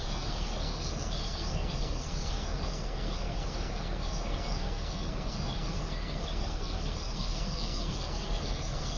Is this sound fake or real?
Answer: fake